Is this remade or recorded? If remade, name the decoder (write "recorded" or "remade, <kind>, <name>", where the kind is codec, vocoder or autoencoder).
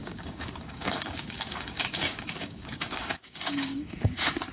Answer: remade, codec, DAC